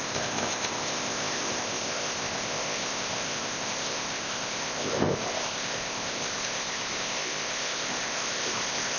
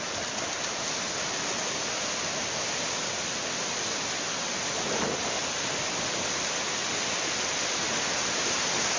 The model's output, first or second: first